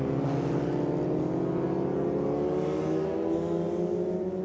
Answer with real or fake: real